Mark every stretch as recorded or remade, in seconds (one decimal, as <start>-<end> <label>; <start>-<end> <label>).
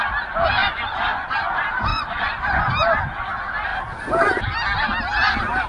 0.0-0.6 recorded; 0.6-1.3 remade; 1.3-1.9 recorded; 1.9-2.7 remade; 2.7-5.7 recorded